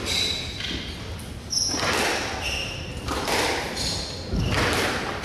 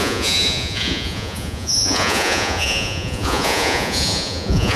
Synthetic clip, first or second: second